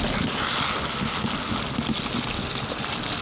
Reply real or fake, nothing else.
real